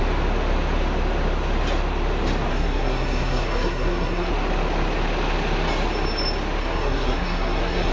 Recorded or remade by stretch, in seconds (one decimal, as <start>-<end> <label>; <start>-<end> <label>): 0.0-2.5 recorded; 2.5-4.3 remade; 4.3-6.6 recorded; 6.6-7.9 remade